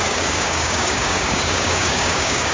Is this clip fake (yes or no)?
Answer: yes